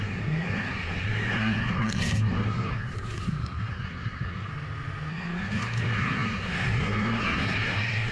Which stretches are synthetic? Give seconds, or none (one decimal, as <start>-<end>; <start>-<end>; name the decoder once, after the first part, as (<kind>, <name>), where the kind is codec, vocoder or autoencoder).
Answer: 0.0-4.5 (codec, SNAC); 5.1-8.1